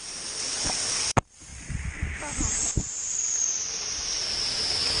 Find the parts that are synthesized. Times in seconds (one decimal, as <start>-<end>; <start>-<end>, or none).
none